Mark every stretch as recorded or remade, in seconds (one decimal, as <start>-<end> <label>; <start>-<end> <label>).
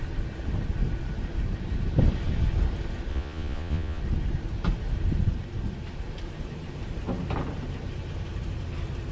0.0-3.1 recorded; 3.1-4.0 remade; 4.0-9.1 recorded